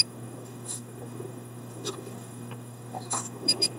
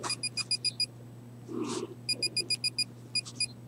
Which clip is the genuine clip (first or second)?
second